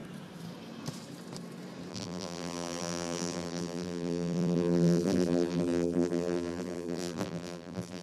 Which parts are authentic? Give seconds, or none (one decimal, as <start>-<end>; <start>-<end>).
0.0-1.9